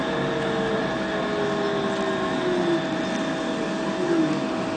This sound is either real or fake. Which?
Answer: real